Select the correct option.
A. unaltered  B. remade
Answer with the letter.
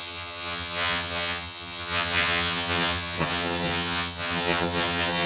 B